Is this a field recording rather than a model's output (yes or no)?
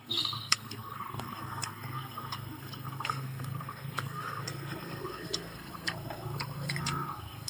no